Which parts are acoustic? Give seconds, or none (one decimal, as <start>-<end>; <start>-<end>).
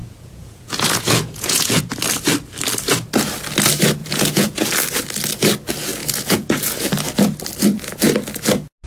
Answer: 1.8-4.0; 4.7-6.0; 6.9-8.9